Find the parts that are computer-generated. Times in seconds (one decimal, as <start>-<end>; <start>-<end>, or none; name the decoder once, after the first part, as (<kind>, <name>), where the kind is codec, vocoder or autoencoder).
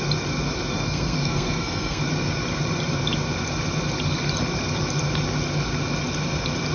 0.7-2.0 (codec, SNAC)